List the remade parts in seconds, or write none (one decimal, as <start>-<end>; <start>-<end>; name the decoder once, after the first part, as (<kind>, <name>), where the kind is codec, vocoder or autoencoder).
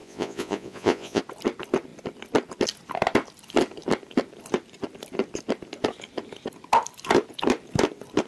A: 0.0-1.2 (vocoder, Vocos)